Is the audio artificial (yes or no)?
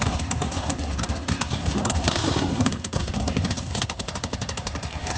yes